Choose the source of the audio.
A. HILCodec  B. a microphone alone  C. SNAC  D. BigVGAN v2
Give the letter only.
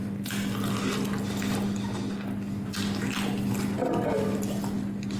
B